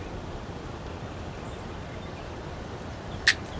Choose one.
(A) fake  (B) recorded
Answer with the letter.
B